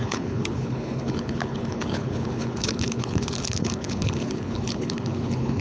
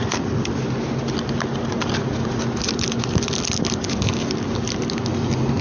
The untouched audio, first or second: second